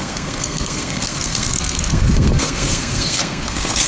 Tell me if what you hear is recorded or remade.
remade